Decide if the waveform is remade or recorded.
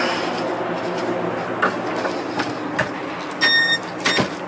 recorded